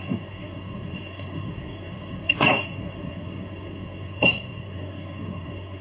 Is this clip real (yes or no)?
no